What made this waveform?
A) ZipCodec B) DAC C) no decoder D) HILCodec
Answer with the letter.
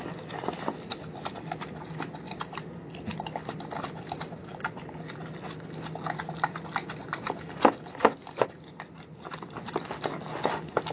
C